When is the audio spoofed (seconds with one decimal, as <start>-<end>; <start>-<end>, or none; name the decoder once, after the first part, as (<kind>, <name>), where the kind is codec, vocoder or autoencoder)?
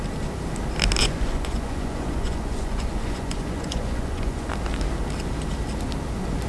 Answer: 1.0-4.5 (vocoder, Vocos)